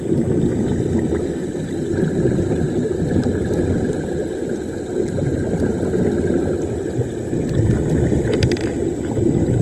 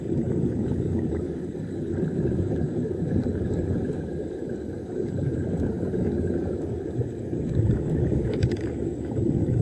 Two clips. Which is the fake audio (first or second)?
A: second